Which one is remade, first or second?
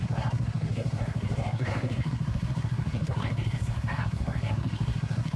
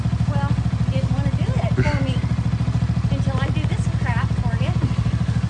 first